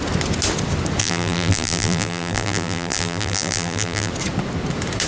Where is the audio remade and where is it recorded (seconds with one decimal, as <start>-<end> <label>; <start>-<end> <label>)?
0.0-1.0 recorded; 1.0-4.1 remade; 4.1-5.1 recorded